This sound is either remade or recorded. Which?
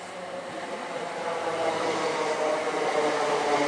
recorded